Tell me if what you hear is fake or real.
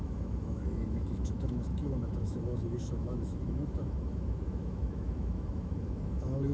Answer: fake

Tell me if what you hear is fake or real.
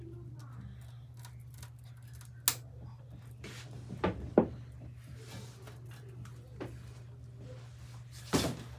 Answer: real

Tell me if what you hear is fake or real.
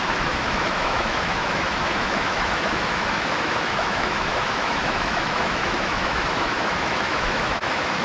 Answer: fake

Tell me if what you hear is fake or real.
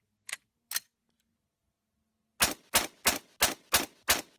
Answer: real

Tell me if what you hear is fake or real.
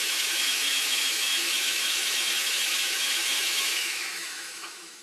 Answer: fake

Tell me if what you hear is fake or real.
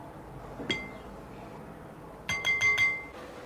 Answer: real